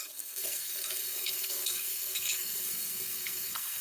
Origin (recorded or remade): remade